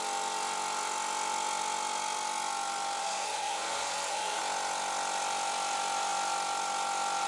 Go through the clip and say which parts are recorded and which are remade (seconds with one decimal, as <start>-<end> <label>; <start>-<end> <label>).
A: 0.0-3.0 recorded; 3.0-4.4 remade; 4.4-7.3 recorded